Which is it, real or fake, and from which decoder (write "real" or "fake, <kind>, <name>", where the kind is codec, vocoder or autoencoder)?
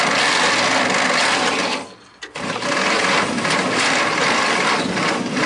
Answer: real